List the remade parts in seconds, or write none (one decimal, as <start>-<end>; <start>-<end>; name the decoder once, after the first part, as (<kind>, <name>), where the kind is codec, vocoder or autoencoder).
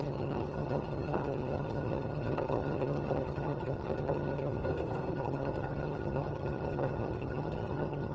0.0-4.6 (vocoder, HiFi-GAN); 5.1-8.1